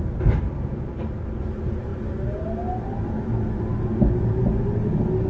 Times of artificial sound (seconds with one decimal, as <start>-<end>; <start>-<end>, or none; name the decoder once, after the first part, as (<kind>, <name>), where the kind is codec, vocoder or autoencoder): none